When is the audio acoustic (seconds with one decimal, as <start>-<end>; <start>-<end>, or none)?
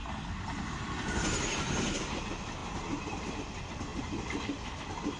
0.0-5.2